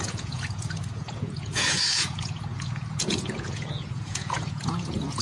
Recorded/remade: remade